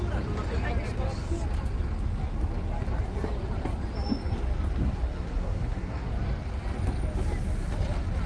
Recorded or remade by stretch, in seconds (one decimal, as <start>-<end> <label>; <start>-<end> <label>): 0.0-4.8 recorded; 4.8-6.1 remade; 6.1-8.3 recorded